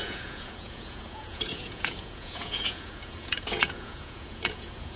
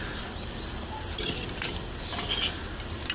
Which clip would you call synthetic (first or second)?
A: first